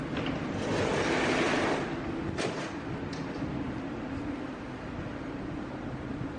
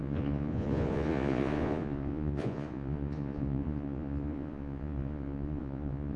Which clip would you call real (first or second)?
first